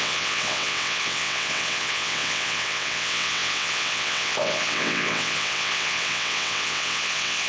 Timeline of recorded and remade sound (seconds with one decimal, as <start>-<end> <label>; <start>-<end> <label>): 0.0-7.5 remade